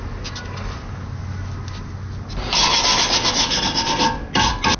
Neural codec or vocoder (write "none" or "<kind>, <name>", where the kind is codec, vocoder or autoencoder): none